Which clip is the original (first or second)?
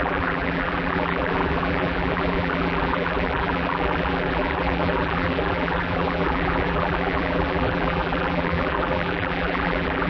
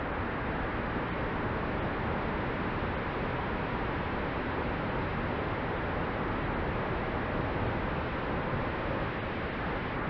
second